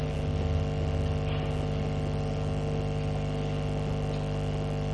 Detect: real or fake real